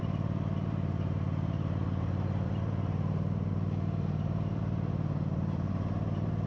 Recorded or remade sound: remade